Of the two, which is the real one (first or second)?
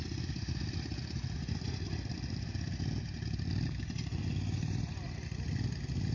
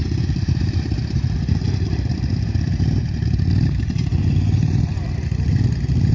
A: first